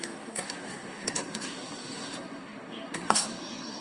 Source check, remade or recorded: remade